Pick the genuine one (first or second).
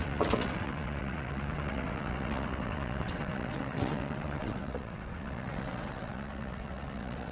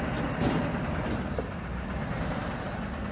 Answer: second